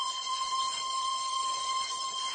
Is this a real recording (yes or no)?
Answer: no